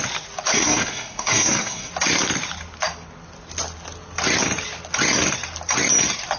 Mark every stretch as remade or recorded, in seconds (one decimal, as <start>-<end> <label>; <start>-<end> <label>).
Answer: 0.0-0.5 recorded; 0.5-1.9 remade; 1.9-6.4 recorded